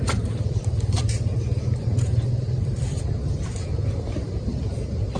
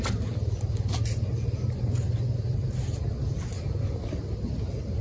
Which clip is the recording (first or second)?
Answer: second